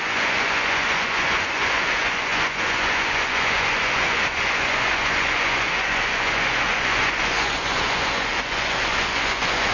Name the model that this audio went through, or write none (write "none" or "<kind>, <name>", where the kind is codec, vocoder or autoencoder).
vocoder, Vocos